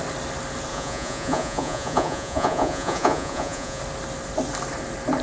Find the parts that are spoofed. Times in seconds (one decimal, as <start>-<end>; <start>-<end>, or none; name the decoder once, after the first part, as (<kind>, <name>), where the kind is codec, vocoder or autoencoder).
0.7-3.8 (vocoder, Vocos)